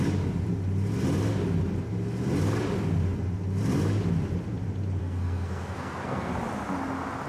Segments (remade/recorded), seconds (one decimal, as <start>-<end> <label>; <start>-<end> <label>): 0.0-5.0 recorded; 5.0-6.3 remade; 6.3-7.3 recorded